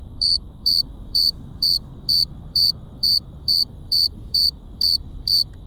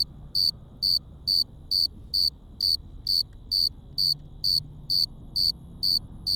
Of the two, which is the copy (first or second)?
first